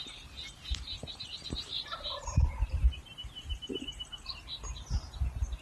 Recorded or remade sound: remade